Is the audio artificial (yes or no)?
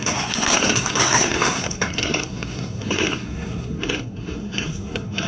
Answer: yes